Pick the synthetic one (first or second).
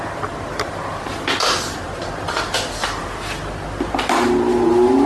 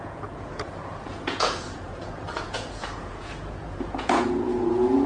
second